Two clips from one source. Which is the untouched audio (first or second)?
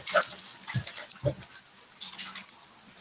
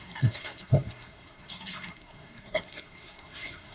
first